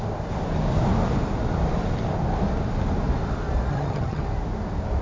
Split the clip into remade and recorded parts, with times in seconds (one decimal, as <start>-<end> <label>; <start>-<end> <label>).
0.0-3.7 recorded; 3.7-4.2 remade; 4.2-5.0 recorded